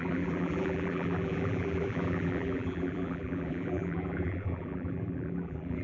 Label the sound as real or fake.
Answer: fake